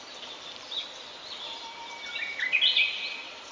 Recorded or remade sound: recorded